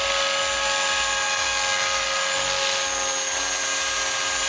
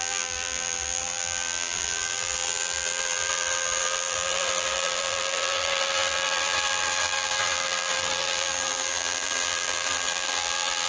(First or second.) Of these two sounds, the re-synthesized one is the second